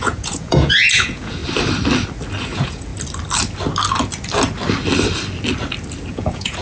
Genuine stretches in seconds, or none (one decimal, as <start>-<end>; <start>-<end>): 1.4-2.4; 2.9-6.1